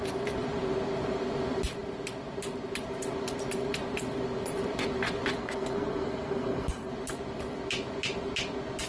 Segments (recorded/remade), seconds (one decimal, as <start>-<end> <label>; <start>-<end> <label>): 0.0-5.4 recorded; 5.4-6.9 remade; 6.9-8.9 recorded